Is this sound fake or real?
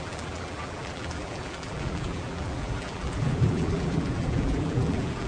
fake